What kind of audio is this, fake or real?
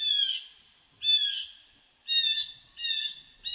real